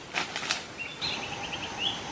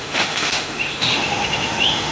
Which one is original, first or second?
first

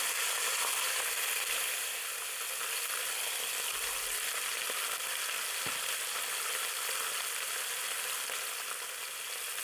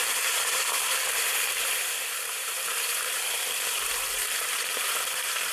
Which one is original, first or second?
first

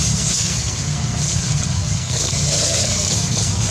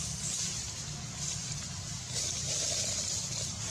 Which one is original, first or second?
second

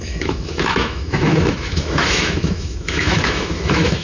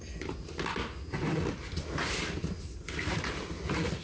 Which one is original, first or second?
second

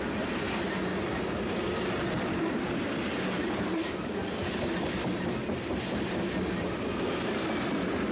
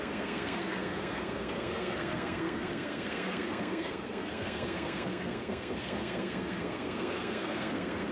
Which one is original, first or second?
first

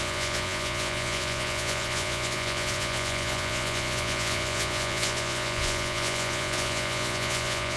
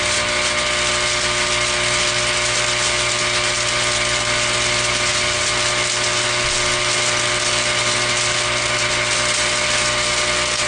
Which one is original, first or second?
second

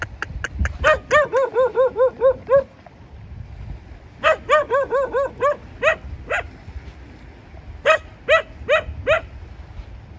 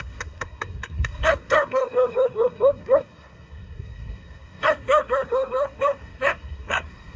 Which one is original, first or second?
first